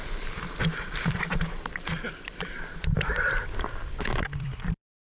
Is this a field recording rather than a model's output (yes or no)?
no